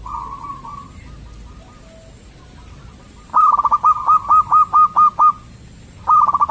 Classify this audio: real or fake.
real